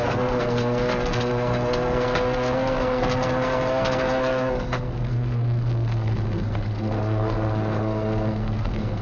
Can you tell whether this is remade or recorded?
remade